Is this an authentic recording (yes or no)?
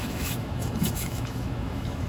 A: no